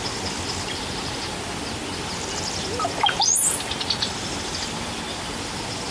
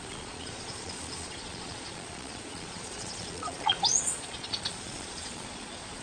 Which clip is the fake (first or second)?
second